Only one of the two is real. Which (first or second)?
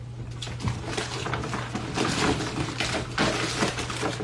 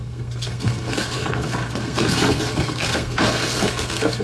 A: first